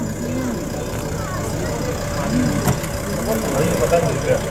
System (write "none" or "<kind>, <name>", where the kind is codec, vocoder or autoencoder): none